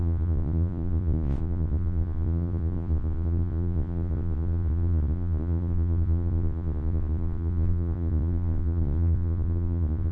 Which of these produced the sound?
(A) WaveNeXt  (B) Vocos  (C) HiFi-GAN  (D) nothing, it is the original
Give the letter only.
B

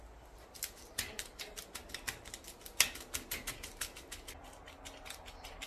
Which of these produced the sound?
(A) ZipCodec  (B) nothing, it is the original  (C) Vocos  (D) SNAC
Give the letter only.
B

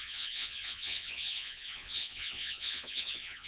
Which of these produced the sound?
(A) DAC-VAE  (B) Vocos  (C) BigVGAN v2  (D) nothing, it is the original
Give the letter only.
B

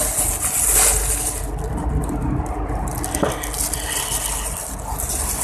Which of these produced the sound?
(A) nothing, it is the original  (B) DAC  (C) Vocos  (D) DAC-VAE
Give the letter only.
A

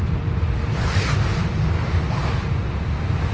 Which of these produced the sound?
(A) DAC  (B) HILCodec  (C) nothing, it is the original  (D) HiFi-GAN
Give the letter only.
C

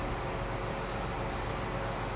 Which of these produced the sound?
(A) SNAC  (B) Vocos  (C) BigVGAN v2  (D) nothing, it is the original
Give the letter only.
D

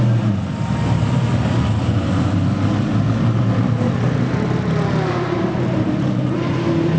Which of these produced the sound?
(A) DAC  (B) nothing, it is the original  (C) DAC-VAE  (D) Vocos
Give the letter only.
B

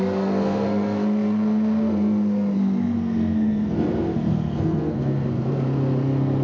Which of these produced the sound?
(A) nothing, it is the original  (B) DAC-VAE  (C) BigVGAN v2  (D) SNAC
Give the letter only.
D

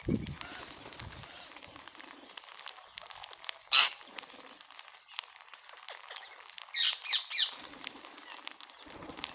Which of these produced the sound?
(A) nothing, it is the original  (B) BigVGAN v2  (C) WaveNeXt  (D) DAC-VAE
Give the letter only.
A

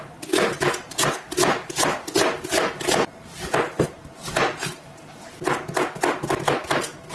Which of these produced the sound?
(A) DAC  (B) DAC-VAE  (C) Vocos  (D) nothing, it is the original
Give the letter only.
D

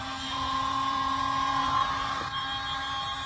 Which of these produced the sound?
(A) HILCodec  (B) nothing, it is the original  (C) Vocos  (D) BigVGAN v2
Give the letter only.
D